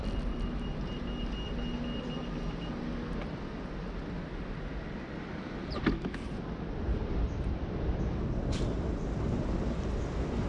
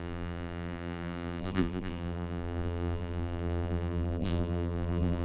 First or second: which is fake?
second